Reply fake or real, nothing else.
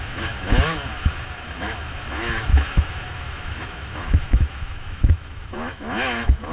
fake